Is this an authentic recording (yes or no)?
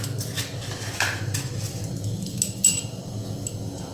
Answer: yes